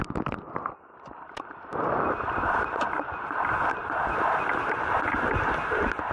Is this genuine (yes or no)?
yes